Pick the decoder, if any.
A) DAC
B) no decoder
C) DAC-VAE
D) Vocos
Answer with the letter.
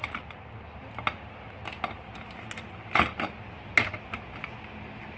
B